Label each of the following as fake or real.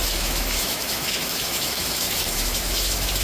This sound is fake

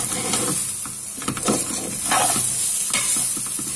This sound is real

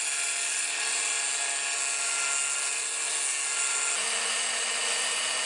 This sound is real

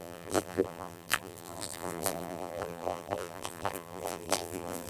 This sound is fake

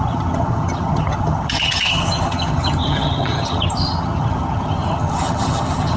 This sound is fake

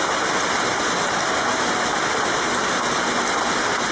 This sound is real